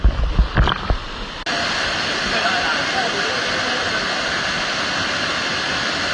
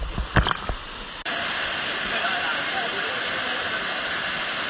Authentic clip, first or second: first